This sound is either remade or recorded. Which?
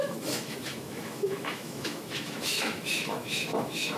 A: remade